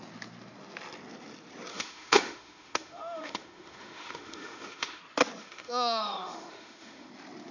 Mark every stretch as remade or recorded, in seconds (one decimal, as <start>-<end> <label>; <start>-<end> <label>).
0.0-1.7 recorded; 1.7-5.0 remade; 5.0-5.4 recorded; 5.4-7.1 remade; 7.1-7.5 recorded